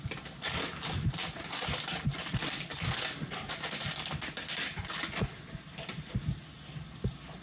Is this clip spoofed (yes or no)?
no